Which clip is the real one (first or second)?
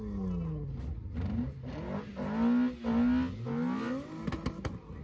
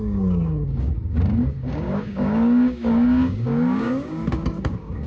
first